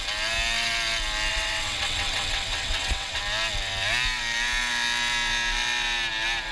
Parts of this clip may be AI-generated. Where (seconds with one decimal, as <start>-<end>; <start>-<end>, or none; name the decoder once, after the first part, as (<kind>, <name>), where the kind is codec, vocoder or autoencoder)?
1.3-3.2 (vocoder, WaveNeXt)